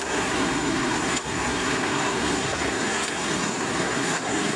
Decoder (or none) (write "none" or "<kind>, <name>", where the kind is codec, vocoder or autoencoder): codec, SNAC